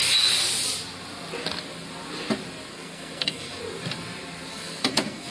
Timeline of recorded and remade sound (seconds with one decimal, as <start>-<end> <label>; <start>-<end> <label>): 0.0-2.7 recorded; 2.7-3.6 remade; 3.6-4.5 recorded; 4.5-5.3 remade